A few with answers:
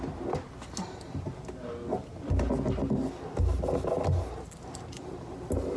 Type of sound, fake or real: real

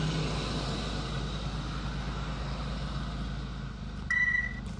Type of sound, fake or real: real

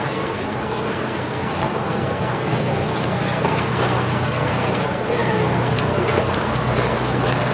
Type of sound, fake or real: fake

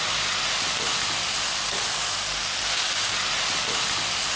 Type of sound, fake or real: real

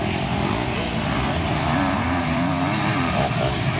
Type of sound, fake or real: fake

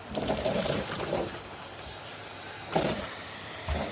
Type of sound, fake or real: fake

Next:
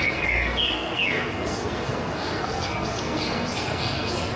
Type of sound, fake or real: fake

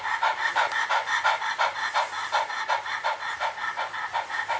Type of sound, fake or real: real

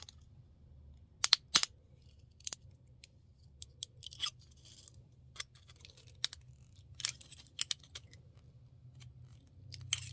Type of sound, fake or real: real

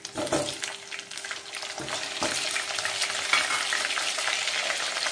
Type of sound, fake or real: real